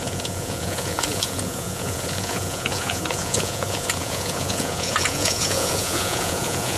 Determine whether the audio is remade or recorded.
remade